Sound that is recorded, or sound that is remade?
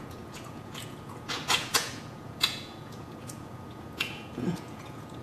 remade